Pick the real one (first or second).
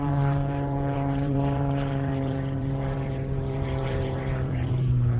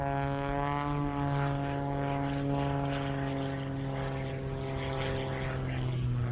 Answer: second